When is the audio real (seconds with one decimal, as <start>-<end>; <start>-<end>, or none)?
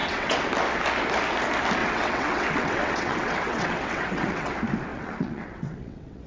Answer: 0.5-1.8; 4.5-4.9